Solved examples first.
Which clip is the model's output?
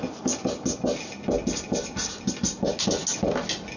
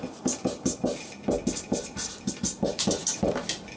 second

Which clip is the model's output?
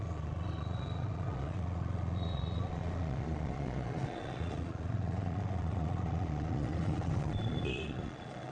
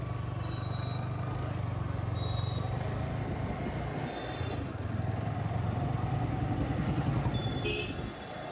first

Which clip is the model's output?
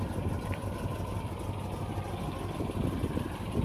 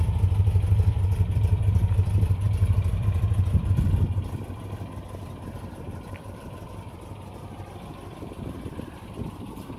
second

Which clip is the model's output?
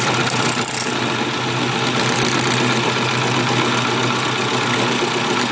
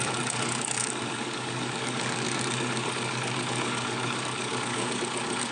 second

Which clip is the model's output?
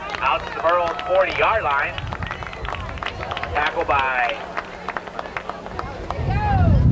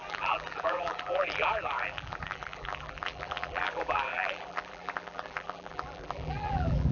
second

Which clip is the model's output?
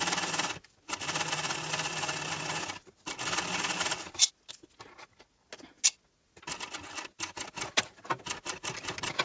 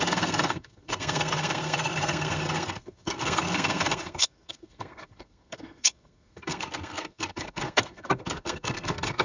second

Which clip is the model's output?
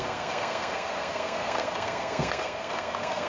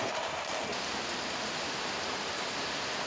first